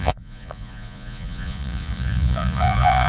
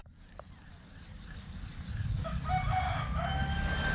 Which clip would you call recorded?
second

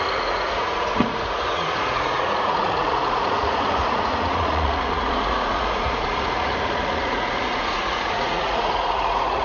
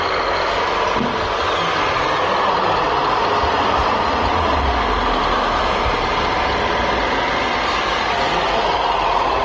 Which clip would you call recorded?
second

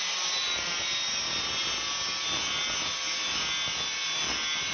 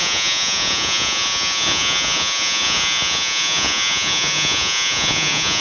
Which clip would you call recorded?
first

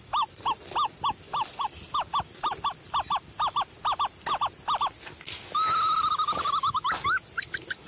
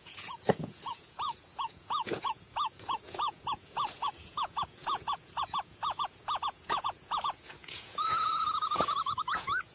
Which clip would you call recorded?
first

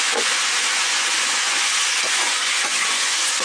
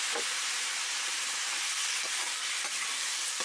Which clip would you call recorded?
second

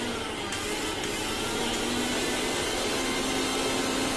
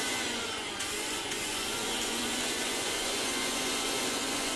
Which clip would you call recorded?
first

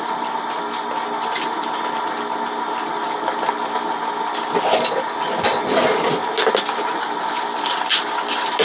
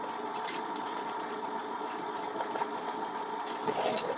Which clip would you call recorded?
first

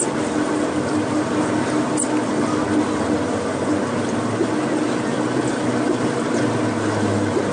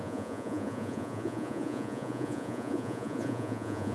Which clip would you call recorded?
first